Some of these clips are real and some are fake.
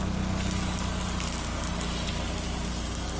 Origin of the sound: real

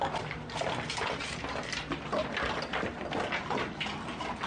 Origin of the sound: real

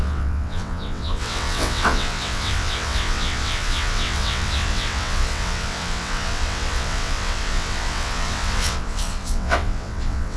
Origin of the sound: fake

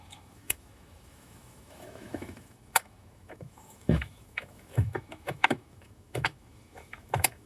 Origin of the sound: fake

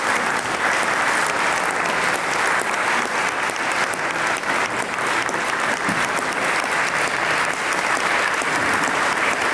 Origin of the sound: real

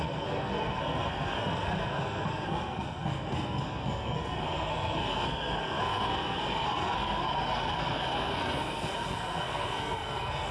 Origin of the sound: fake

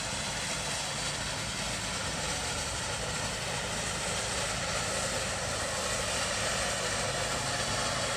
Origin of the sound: real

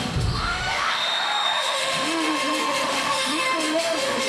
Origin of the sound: fake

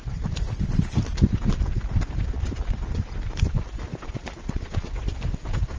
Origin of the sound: real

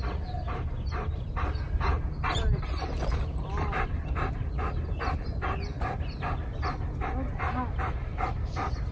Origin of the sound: real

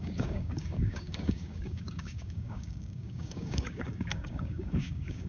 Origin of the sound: fake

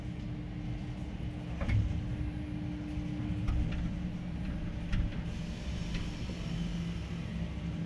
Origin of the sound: real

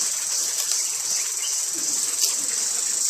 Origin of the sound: real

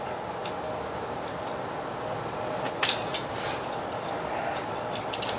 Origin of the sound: real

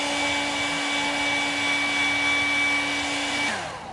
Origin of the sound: real